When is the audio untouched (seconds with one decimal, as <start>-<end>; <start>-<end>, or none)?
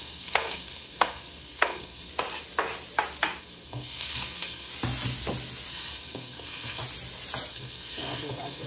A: 2.1-3.4; 4.7-5.7; 6.8-7.5